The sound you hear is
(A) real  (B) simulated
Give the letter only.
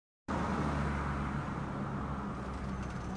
A